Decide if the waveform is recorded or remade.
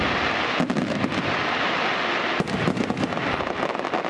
recorded